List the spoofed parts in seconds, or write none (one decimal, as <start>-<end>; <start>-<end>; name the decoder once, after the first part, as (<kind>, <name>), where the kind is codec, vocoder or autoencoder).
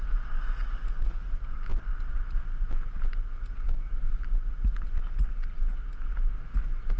none